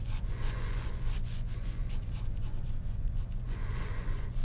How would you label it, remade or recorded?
remade